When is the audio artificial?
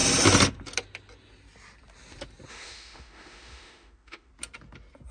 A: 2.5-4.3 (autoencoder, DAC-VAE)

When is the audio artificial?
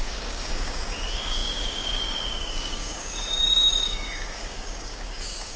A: 0.0-5.6 (codec, DAC)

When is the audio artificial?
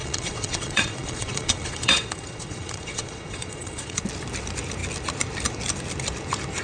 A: 0.0-4.0 (vocoder, Vocos)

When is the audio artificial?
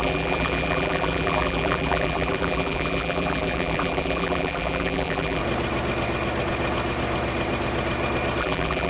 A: 0.0-5.4 (vocoder, BigVGAN v2); 8.4-8.9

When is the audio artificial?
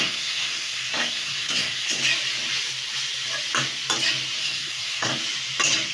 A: 0.0-2.0 (codec, SNAC); 4.4-5.1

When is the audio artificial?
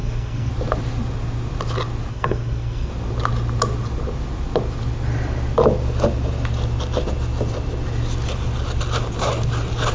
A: 0.0-0.5 (codec, SNAC); 2.1-2.9